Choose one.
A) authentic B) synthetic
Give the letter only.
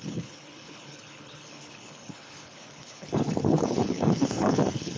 B